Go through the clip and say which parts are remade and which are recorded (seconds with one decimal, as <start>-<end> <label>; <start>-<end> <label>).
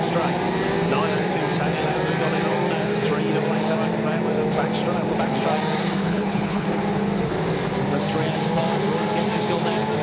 0.0-6.0 recorded; 6.0-6.8 remade; 6.8-10.0 recorded